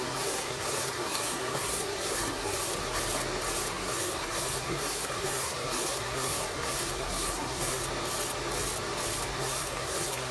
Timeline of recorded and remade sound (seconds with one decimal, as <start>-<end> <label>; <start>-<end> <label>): 0.0-3.0 remade; 3.0-3.7 recorded; 3.7-7.8 remade; 7.8-9.4 recorded; 9.4-10.3 remade